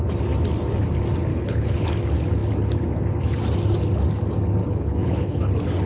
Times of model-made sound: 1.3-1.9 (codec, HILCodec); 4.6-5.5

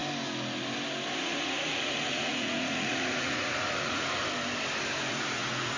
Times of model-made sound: 1.2-4.2 (vocoder, Vocos); 5.1-5.8

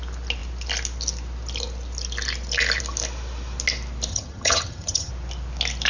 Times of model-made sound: 4.1-5.1 (vocoder, HiFi-GAN)

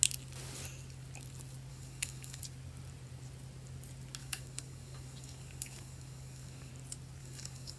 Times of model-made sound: 1.7-2.4 (codec, DAC); 4.2-6.7; 7.2-7.8

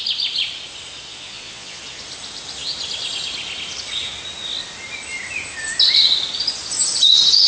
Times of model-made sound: 1.1-1.8 (vocoder, Vocos)

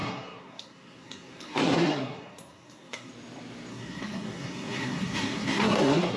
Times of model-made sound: 0.0-3.1 (codec, SNAC); 3.7-6.2

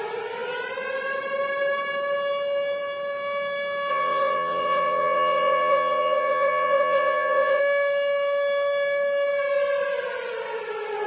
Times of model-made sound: 3.9-7.6 (vocoder, WaveNeXt)